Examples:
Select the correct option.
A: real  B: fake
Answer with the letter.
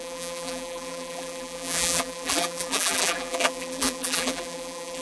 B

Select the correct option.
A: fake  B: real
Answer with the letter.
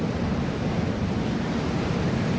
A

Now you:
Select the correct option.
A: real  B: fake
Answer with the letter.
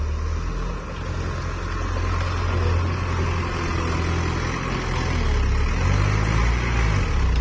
A